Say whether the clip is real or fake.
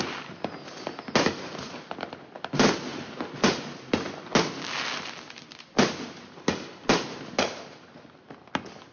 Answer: real